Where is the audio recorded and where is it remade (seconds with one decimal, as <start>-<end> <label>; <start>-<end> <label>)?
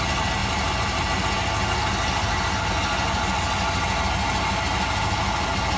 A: 0.0-5.8 recorded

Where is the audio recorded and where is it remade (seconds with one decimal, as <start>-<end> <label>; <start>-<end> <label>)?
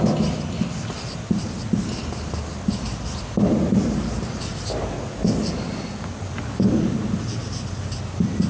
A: 0.0-4.5 recorded; 4.5-6.5 remade; 6.5-8.5 recorded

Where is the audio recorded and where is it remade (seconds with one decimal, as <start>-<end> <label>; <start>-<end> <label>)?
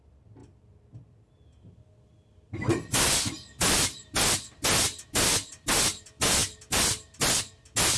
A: 0.0-8.0 recorded